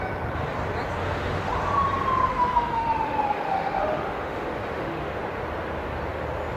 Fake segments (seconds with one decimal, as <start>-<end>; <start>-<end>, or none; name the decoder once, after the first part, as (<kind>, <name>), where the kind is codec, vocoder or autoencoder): 1.0-1.5 (autoencoder, DAC-VAE); 2.3-5.2